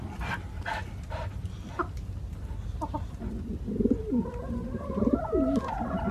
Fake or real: real